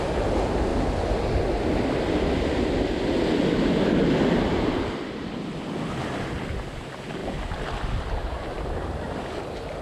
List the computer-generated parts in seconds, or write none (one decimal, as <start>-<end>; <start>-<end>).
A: none